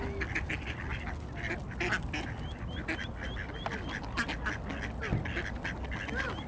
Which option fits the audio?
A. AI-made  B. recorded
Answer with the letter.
B